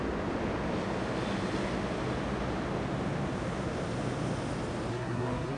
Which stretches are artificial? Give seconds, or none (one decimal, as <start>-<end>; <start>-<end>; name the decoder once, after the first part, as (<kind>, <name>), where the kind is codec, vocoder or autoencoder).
4.9-5.6 (codec, SNAC)